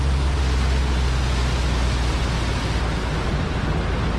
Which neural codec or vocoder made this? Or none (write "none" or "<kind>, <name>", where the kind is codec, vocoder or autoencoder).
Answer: none